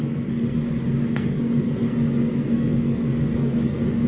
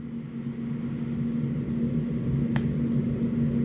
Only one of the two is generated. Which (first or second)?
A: first